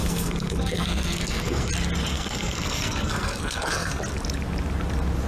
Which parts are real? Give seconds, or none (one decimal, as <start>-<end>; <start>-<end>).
1.7-2.1; 4.0-5.3